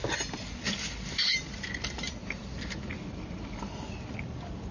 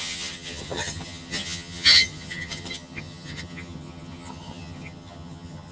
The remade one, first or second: second